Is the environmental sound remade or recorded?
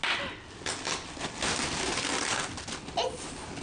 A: recorded